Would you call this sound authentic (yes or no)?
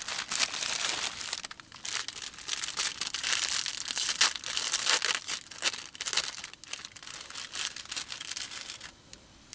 yes